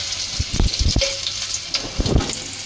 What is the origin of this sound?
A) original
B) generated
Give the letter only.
A